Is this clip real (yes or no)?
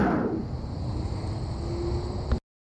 yes